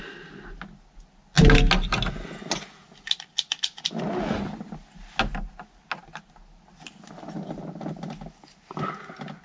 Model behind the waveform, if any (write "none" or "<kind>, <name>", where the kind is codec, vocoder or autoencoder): none